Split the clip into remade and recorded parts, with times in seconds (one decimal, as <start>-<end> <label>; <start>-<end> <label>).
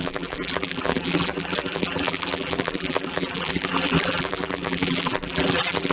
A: 0.0-5.9 remade